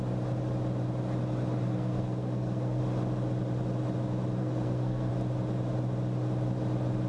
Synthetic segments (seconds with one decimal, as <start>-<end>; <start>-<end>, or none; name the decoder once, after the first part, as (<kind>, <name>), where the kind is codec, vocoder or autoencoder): 1.7-2.8 (codec, SNAC); 4.4-5.1